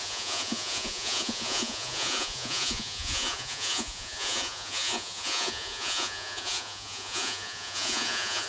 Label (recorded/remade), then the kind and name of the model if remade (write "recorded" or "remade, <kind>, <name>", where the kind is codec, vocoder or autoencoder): remade, vocoder, Vocos